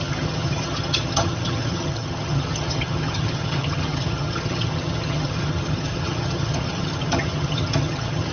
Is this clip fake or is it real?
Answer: fake